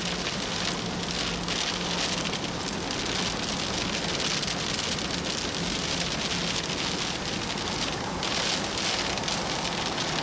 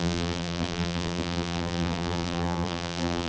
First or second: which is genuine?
first